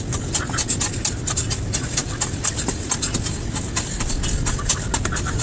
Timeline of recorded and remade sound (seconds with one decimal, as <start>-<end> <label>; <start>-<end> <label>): 0.0-5.4 recorded